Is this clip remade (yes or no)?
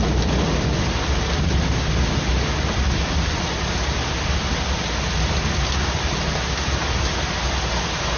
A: no